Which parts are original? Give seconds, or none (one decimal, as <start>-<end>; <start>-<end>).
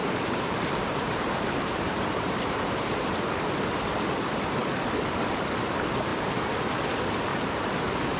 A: 3.1-7.3